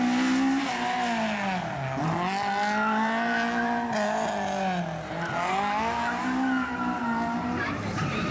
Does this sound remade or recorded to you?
recorded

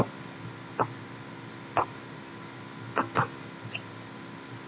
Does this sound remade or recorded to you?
recorded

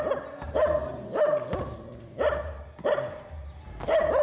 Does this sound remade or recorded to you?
recorded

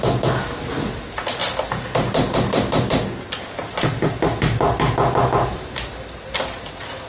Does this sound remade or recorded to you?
recorded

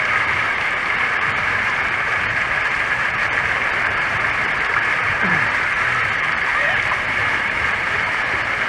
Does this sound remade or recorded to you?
remade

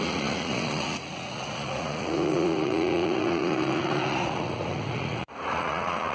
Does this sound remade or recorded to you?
remade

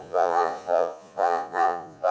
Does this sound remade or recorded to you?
remade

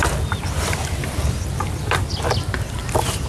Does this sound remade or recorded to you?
remade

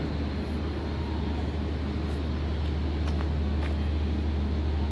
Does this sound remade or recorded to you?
recorded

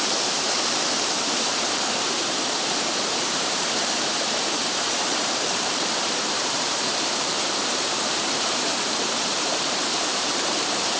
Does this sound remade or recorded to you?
remade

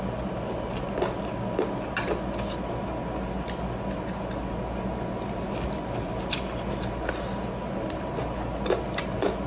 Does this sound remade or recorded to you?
recorded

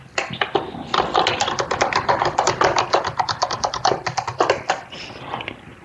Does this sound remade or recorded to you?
remade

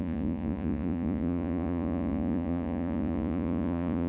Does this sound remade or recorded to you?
remade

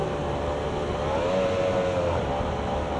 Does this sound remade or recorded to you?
recorded